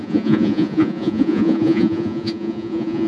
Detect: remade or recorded remade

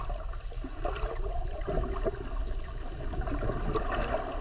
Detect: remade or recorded recorded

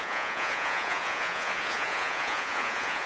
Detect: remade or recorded remade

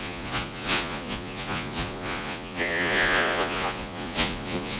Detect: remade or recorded remade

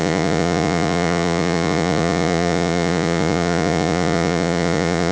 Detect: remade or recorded remade